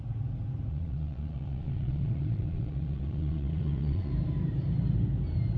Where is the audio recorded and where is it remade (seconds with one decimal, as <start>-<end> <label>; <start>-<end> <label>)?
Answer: 0.0-0.7 recorded; 0.7-4.1 remade; 4.1-5.6 recorded